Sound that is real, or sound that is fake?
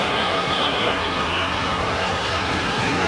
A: fake